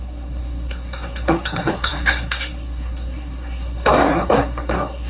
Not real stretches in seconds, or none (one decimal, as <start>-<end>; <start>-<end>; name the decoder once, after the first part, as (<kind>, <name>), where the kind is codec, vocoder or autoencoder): 0.0-5.1 (codec, SNAC)